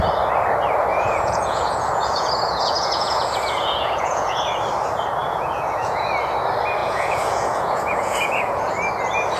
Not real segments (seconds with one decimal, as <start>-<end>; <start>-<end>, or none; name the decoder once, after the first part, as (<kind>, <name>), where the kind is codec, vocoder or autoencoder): 0.9-4.5 (vocoder, Vocos); 5.2-6.1; 6.8-8.7